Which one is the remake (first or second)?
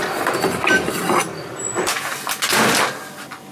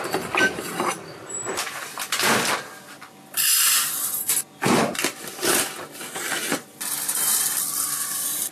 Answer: second